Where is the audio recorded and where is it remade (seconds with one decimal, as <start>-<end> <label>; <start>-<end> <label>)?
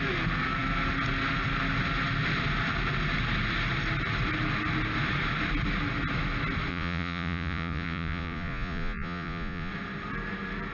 0.0-6.7 recorded; 6.7-9.7 remade; 9.7-10.7 recorded